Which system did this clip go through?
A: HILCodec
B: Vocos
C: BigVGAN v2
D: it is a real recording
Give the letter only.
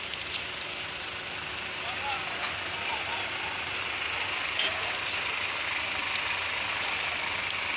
D